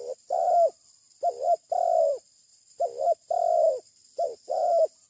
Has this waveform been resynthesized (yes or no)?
no